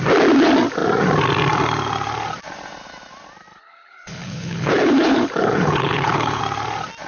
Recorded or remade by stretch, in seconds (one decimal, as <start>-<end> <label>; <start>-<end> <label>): 0.0-3.5 recorded; 3.5-6.4 remade; 6.4-7.1 recorded